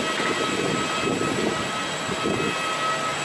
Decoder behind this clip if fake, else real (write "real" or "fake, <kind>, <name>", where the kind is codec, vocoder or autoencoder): real